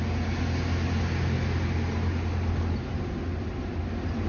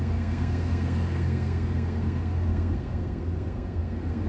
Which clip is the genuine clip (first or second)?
first